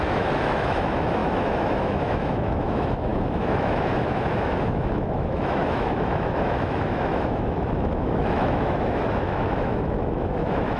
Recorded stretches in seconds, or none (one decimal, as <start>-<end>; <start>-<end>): none